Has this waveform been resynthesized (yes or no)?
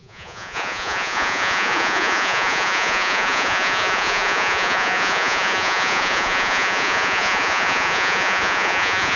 yes